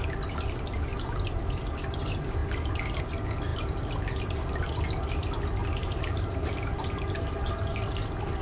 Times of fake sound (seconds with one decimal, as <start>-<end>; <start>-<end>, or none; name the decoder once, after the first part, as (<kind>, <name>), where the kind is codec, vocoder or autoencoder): 5.6-6.5 (vocoder, BigVGAN v2)